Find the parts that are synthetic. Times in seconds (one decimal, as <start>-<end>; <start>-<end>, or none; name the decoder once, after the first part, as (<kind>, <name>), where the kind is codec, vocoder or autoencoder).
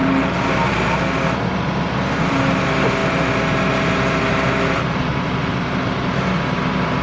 none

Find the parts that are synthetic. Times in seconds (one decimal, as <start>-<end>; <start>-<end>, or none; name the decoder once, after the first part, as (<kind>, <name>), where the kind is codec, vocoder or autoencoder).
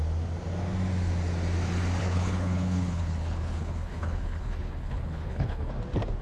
2.0-5.7 (codec, HILCodec)